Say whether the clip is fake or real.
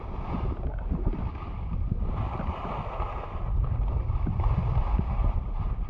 real